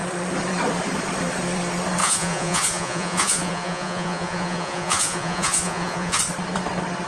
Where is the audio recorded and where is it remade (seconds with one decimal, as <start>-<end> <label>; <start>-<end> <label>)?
0.0-2.0 recorded; 2.0-6.2 remade; 6.2-7.1 recorded